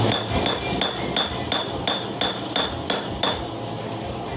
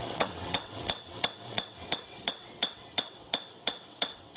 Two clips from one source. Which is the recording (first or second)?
first